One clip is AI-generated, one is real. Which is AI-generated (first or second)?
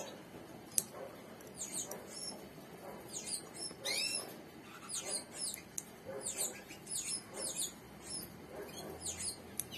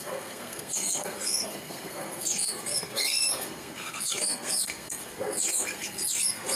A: second